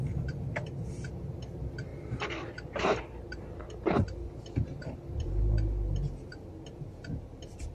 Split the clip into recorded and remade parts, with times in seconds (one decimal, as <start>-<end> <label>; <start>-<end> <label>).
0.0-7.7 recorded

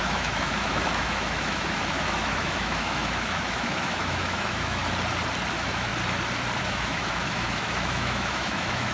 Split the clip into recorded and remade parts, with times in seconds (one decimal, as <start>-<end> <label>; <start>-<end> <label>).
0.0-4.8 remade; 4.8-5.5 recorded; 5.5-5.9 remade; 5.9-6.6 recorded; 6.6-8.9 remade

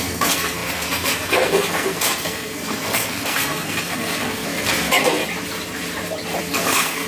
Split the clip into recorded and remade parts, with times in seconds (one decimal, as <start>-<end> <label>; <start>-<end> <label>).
0.0-5.2 remade; 5.2-6.4 recorded; 6.4-7.1 remade

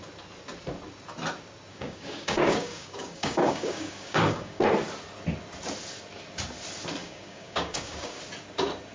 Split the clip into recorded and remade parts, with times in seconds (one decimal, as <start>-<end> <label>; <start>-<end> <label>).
0.0-1.7 recorded; 1.7-4.6 remade; 4.6-7.0 recorded; 7.0-8.2 remade; 8.2-8.9 recorded

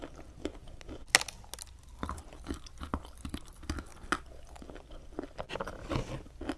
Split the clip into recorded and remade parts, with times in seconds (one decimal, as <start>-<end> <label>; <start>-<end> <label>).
0.0-6.6 recorded

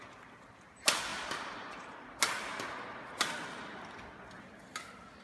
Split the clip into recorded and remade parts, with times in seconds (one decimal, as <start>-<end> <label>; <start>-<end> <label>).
0.0-5.2 recorded

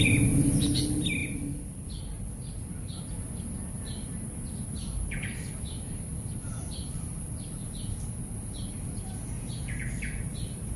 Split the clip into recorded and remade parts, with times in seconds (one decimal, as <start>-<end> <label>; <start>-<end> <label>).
0.0-1.2 recorded; 1.2-3.0 remade; 3.0-6.1 recorded; 6.1-7.7 remade; 7.7-10.8 recorded

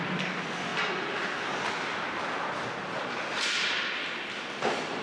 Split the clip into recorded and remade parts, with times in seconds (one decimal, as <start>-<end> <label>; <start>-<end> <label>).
0.0-5.0 recorded